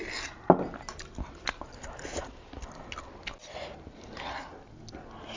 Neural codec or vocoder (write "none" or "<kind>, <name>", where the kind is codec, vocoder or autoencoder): none